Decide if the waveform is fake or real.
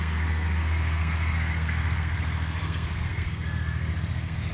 fake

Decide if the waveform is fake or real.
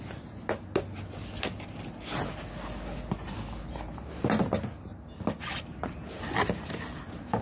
real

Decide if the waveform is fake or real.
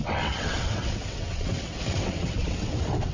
fake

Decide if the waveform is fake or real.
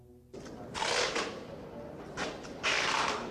real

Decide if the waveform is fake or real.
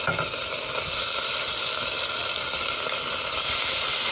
real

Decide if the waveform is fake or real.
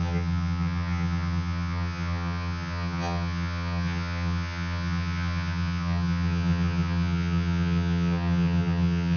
fake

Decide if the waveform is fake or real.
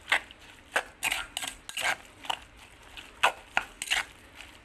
real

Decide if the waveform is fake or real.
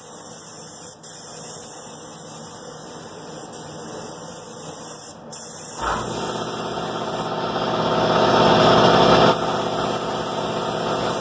real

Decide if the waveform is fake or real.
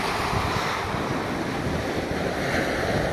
real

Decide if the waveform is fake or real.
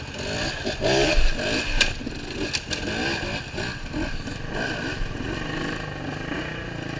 real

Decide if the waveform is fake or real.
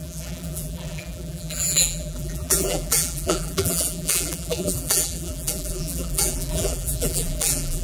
fake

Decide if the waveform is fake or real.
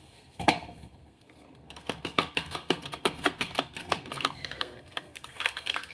fake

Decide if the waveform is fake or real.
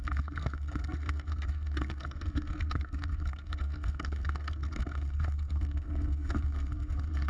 fake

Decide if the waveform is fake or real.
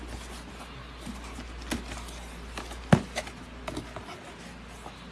real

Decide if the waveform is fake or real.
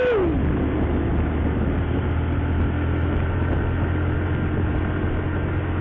real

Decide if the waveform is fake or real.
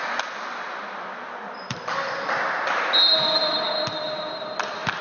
real